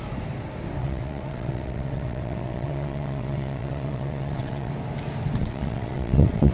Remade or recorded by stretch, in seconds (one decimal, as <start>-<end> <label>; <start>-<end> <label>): 0.0-0.8 recorded; 0.8-4.7 remade; 4.7-5.4 recorded; 5.4-6.5 remade